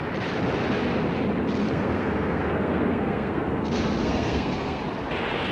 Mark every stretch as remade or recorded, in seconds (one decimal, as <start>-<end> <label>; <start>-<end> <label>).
0.0-1.6 recorded; 1.6-4.8 remade; 4.8-5.5 recorded

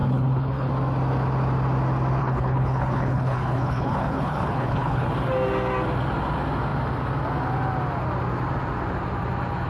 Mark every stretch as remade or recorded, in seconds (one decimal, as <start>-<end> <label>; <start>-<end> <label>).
0.0-0.7 remade; 0.7-2.2 recorded; 2.2-5.1 remade; 5.1-9.7 recorded